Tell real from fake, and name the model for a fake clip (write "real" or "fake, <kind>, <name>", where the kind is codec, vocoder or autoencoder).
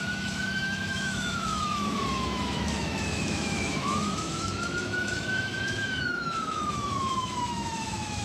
fake, autoencoder, DAC-VAE